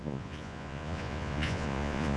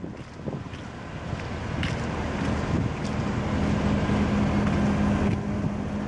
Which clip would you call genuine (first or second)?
second